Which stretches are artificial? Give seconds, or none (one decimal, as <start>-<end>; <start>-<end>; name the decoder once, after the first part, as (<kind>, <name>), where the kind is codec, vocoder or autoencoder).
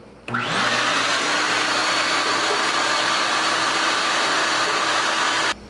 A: 1.8-5.2 (vocoder, BigVGAN v2)